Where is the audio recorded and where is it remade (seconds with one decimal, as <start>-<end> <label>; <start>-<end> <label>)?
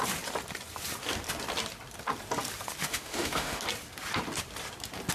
0.0-2.9 recorded; 2.9-3.6 remade; 3.6-5.1 recorded